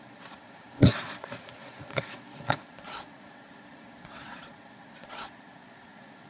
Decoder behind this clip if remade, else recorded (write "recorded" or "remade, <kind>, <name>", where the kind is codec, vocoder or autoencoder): remade, vocoder, Vocos